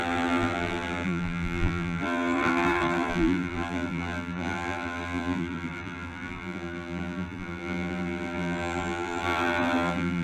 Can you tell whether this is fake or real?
fake